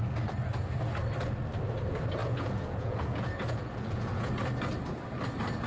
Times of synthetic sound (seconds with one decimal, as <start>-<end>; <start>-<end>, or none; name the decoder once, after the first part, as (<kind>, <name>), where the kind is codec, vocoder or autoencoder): 2.2-4.3 (vocoder, Vocos)